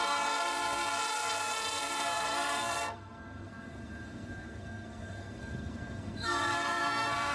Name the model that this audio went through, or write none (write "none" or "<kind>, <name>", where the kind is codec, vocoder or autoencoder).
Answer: codec, SNAC